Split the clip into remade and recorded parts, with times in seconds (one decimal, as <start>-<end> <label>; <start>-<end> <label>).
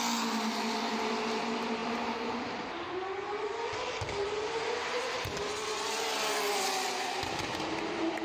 0.0-8.2 recorded